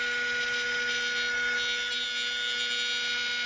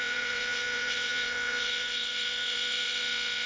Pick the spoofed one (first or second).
second